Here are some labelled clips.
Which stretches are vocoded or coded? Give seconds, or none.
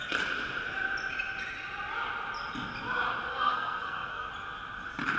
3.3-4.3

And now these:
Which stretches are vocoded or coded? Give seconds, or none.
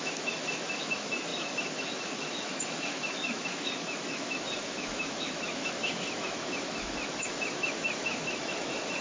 0.0-9.0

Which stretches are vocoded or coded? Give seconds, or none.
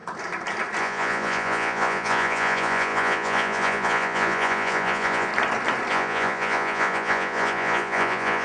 0.8-5.3; 5.9-8.4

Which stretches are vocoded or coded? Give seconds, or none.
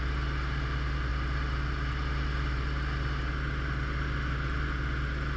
none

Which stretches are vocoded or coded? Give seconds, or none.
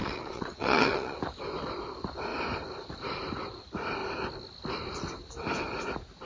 0.0-1.2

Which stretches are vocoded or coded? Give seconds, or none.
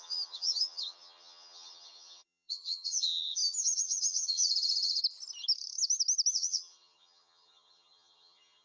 0.0-5.0; 6.3-8.6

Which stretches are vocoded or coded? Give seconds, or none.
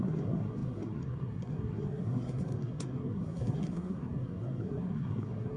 0.0-5.6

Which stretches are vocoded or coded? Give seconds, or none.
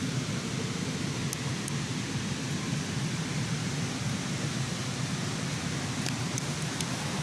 0.0-1.2; 2.7-4.8; 5.6-7.2